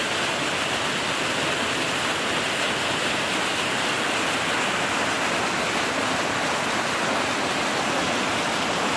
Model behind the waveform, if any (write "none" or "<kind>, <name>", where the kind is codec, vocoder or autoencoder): none